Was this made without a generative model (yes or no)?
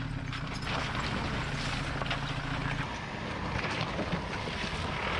yes